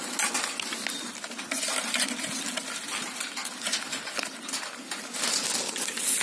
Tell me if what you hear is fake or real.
real